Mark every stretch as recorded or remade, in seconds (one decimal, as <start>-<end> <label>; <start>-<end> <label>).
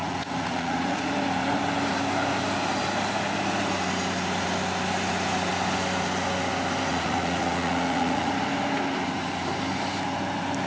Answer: 0.0-1.1 remade; 1.1-6.9 recorded; 6.9-8.3 remade; 8.3-10.7 recorded